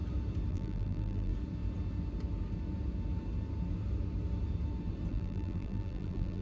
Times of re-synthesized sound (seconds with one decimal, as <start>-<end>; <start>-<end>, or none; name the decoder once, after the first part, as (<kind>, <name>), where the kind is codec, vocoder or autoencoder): 0.5-1.3 (vocoder, BigVGAN v2); 5.1-6.4

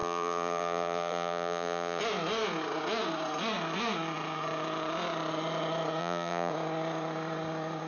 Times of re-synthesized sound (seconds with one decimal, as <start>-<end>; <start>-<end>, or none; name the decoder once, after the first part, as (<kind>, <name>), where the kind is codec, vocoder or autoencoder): 0.0-2.0 (vocoder, BigVGAN v2); 6.0-6.5

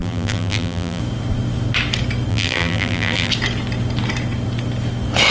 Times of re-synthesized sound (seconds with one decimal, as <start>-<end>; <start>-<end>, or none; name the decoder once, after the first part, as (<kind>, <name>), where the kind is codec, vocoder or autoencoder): 0.0-1.0 (vocoder, BigVGAN v2); 2.3-3.3

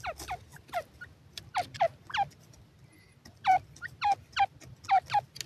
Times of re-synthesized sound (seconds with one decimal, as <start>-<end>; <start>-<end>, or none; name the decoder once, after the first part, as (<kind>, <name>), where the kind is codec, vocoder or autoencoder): none